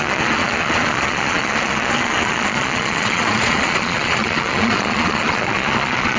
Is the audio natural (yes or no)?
no